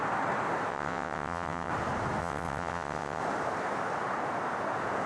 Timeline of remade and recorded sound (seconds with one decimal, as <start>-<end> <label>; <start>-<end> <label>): 0.0-0.7 recorded; 0.7-1.7 remade; 1.7-2.2 recorded; 2.2-3.2 remade; 3.2-5.1 recorded